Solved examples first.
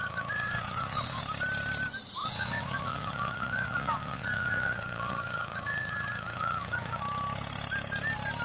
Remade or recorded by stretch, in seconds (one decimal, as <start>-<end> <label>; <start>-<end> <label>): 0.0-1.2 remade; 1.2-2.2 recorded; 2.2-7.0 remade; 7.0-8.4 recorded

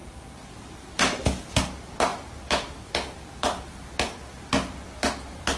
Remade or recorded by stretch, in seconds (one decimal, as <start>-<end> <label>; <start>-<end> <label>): 0.0-5.6 recorded

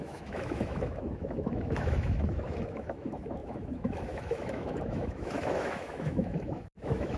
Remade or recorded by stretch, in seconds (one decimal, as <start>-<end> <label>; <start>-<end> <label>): 0.0-7.2 remade

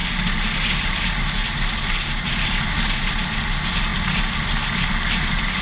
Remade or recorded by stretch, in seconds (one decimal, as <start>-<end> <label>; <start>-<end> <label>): 0.0-5.6 recorded

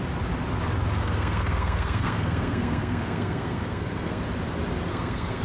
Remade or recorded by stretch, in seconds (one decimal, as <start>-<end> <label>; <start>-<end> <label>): 0.0-1.0 recorded; 1.0-4.2 remade; 4.2-4.9 recorded; 4.9-5.4 remade

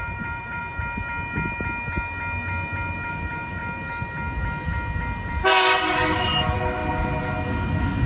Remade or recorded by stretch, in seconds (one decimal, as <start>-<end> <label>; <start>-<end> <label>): 0.0-0.6 remade; 0.6-3.1 recorded; 3.1-3.6 remade; 3.6-5.4 recorded; 5.4-6.8 remade; 6.8-8.1 recorded

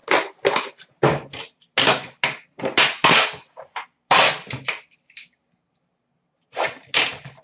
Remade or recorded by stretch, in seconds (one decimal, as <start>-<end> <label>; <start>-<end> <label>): 0.0-7.4 recorded

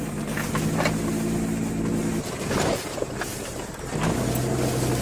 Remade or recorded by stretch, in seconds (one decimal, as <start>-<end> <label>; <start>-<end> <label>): 0.0-5.0 recorded